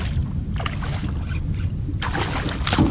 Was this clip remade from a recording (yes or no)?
no